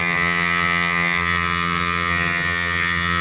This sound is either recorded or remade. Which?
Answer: remade